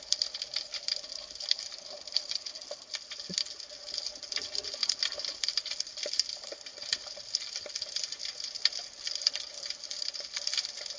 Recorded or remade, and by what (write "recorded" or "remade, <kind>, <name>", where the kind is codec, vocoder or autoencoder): recorded